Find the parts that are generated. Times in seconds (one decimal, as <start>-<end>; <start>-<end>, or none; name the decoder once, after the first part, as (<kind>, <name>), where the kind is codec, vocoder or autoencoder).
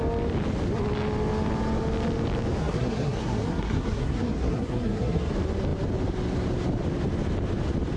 2.6-5.3 (codec, SNAC)